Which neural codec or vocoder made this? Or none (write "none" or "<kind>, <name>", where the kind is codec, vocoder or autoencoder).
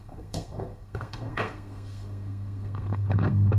codec, SNAC